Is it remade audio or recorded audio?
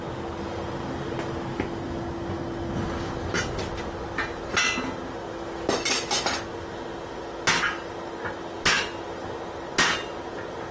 recorded